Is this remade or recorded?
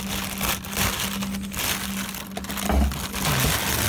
recorded